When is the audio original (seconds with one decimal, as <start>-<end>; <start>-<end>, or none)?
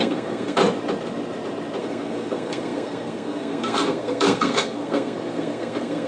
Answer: 0.6-1.8